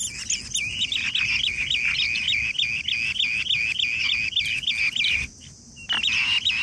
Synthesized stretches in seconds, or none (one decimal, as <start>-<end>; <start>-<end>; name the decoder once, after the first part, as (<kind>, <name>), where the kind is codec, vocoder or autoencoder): none

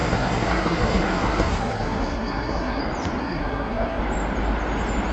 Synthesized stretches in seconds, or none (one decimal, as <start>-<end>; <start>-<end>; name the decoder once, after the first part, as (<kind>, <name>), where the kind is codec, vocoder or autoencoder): 0.0-2.8 (codec, SNAC); 3.2-4.0

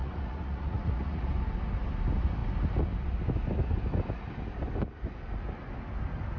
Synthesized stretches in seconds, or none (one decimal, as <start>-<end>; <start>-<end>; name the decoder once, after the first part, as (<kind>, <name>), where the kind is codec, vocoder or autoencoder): 0.0-1.3 (vocoder, Vocos)